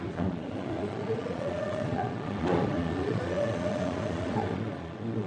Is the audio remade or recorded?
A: remade